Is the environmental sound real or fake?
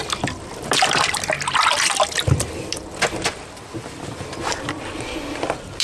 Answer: real